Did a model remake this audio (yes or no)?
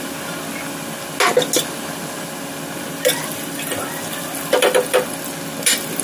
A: no